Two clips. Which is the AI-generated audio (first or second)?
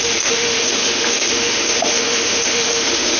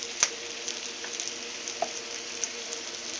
first